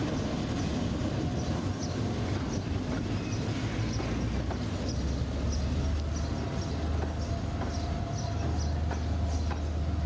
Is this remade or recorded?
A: recorded